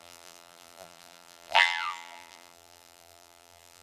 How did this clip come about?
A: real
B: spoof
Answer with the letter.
B